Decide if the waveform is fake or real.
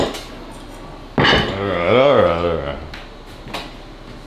real